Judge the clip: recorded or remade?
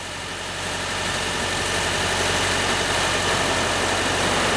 recorded